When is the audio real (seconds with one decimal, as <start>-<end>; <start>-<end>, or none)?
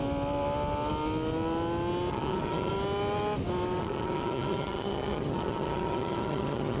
0.0-2.1; 2.7-3.8